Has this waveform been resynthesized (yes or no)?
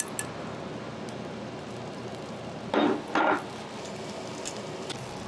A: no